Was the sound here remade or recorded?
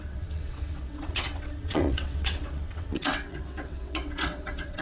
remade